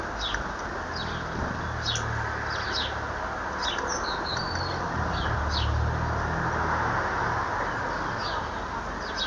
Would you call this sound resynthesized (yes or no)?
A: no